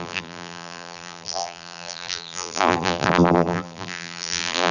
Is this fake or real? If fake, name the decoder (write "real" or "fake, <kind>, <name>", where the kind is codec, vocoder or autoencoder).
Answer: fake, vocoder, BigVGAN v2